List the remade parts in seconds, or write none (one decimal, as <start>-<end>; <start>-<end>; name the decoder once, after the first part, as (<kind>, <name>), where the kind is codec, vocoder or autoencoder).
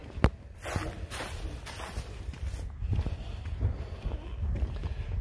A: none